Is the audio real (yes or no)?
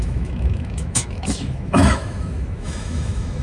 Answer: no